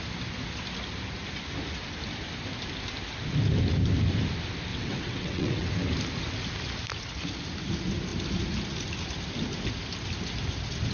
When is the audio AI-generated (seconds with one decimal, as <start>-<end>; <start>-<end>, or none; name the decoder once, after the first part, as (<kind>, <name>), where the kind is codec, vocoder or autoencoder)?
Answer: 4.7-5.7 (vocoder, WaveNeXt)